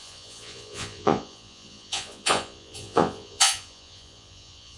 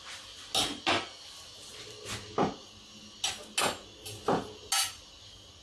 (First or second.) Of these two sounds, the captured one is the second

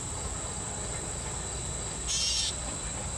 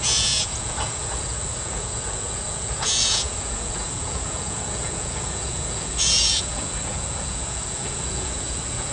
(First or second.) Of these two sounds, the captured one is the first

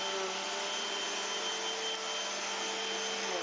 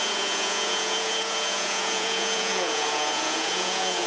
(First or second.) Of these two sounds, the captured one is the first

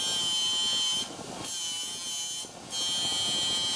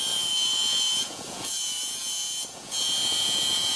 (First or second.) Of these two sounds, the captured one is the first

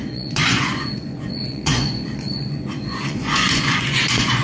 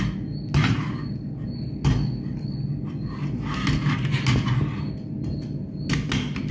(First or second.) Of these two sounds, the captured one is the second